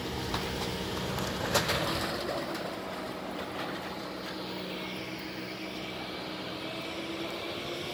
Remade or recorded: recorded